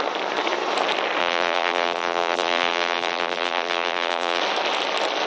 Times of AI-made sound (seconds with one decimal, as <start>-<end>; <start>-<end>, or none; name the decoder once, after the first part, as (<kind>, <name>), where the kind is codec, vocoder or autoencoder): 1.2-4.4 (vocoder, BigVGAN v2)